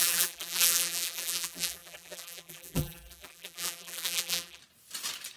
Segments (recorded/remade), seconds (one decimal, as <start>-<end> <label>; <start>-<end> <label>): 0.0-4.6 remade; 4.6-5.4 recorded